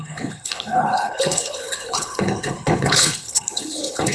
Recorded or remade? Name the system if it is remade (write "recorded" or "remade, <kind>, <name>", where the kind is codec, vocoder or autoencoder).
remade, codec, HILCodec